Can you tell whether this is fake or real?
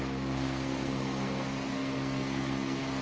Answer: fake